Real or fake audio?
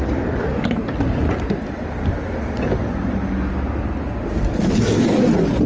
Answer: real